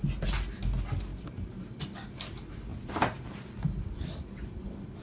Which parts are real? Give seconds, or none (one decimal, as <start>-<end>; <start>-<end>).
0.0-1.1; 1.7-5.0